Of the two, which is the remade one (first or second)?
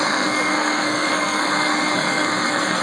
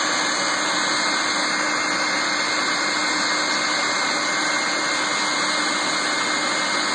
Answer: first